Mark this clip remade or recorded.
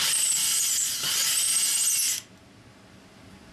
recorded